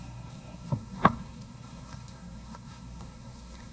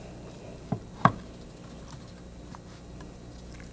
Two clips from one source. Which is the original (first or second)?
second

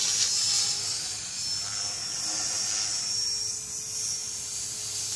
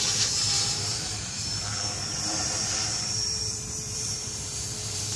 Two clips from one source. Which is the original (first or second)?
first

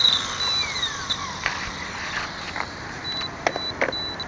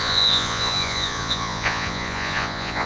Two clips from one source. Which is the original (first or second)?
first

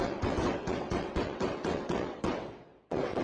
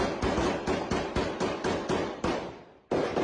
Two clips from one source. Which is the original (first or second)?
second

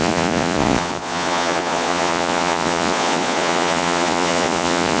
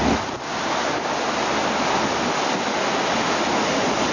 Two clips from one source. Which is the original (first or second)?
second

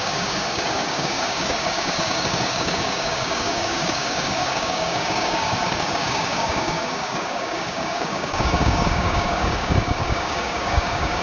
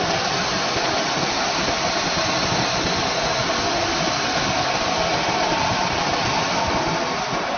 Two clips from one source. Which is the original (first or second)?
second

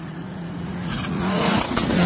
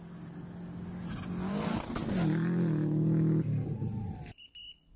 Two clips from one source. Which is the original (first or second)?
second